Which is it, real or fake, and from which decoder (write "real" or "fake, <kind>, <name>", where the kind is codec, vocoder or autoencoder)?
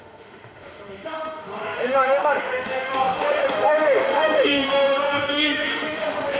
fake, autoencoder, DAC-VAE